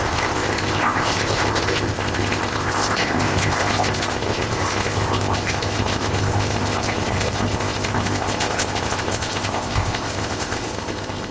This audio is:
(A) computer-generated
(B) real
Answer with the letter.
A